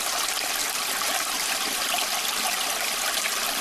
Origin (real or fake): real